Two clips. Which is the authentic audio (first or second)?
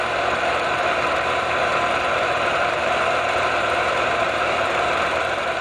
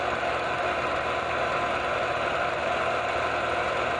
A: second